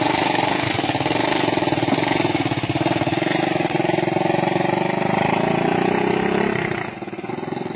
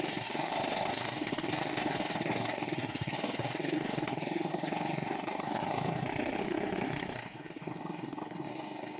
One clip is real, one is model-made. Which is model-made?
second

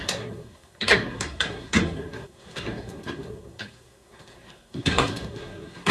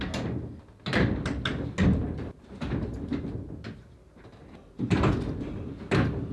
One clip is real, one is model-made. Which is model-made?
first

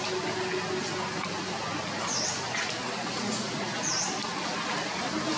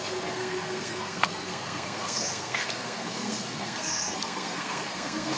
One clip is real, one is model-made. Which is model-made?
second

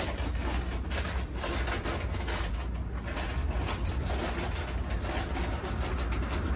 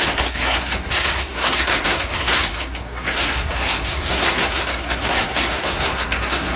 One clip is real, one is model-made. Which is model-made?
second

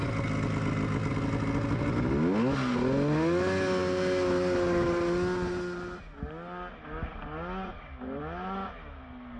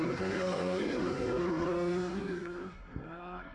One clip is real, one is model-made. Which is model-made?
second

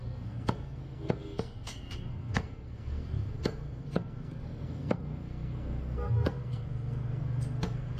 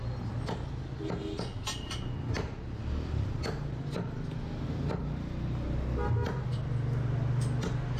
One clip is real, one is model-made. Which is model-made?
first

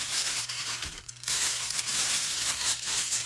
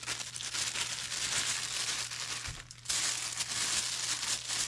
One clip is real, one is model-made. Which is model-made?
first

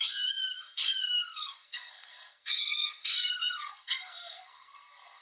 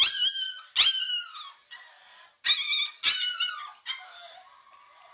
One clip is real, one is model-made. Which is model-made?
first